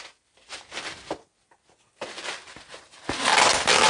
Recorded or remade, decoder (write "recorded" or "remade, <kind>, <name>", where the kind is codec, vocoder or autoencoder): recorded